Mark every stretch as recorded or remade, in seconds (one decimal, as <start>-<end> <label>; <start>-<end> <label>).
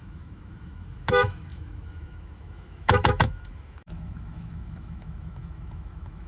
0.0-6.3 remade